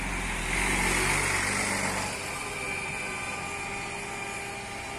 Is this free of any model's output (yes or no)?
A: yes